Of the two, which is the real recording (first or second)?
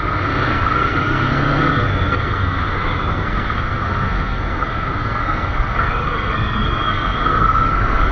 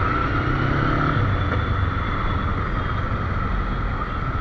second